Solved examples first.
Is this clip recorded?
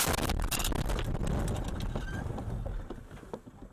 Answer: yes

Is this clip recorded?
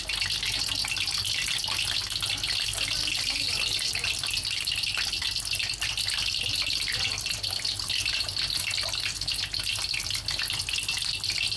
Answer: yes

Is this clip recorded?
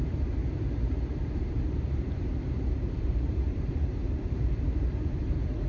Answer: no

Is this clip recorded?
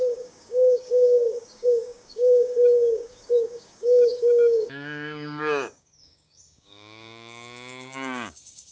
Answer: no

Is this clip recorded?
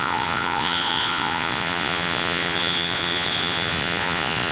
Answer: no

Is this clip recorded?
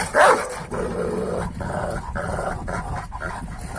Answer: yes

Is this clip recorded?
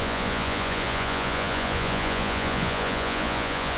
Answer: no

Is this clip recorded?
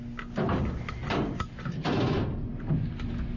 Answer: yes